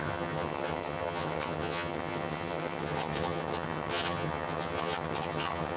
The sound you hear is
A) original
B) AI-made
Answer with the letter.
B